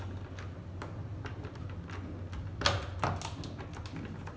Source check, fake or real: real